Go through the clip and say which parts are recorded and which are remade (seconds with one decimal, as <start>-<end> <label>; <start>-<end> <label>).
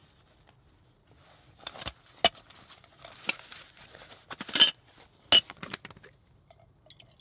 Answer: 0.0-7.2 recorded